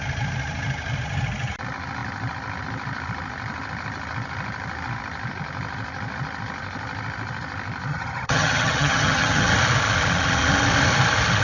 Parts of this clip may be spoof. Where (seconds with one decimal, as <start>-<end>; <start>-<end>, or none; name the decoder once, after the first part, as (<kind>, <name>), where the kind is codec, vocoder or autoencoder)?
7.9-9.5 (vocoder, HiFi-GAN)

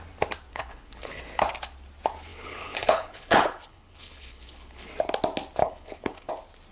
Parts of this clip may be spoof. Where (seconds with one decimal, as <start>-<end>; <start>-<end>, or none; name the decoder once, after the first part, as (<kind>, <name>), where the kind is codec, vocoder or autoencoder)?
0.5-1.2 (codec, HILCodec); 2.3-4.9; 5.6-6.3